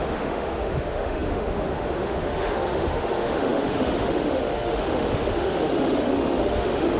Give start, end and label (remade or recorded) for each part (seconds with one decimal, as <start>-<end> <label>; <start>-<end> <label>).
0.0-7.0 remade

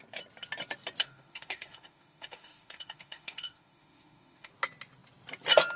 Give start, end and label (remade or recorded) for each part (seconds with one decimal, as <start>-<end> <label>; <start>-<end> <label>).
0.0-1.0 recorded; 1.0-4.5 remade; 4.5-5.8 recorded